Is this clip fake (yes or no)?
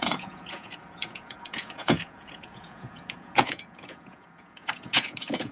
yes